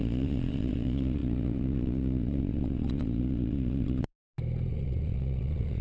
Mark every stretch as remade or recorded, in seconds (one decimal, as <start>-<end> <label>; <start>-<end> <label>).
0.0-4.1 remade; 4.1-4.7 recorded; 4.7-5.8 remade